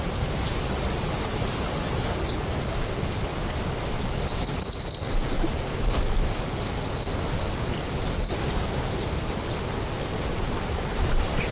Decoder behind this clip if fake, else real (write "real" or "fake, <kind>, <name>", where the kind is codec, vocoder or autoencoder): real